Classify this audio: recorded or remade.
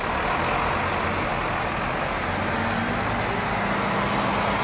recorded